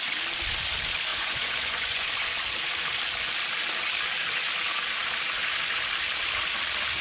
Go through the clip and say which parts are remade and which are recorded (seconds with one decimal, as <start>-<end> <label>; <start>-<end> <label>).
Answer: 0.0-1.1 recorded; 1.1-2.1 remade; 2.1-7.0 recorded